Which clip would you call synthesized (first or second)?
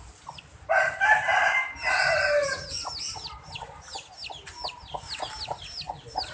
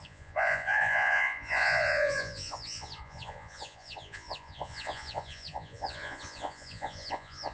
second